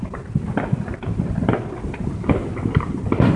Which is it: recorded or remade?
recorded